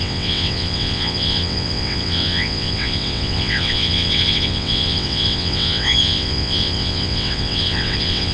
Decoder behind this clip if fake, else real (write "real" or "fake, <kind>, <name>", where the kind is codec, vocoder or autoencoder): fake, vocoder, WaveNeXt